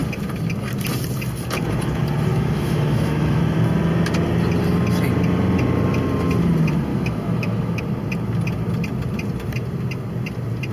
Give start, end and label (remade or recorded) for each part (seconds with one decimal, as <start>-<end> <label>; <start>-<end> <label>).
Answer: 0.0-2.3 recorded; 2.3-3.4 remade; 3.4-6.9 recorded; 6.9-7.8 remade; 7.8-10.7 recorded